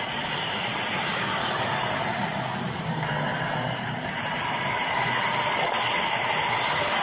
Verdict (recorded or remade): recorded